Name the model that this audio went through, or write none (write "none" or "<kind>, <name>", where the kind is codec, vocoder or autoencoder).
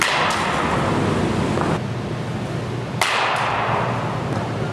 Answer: none